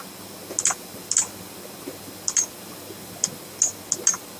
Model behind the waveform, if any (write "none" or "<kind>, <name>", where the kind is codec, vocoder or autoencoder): none